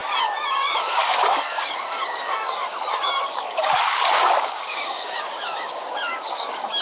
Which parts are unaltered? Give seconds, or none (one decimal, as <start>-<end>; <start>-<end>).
none